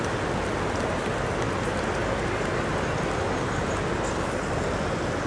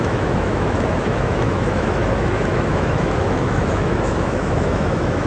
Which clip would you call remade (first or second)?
second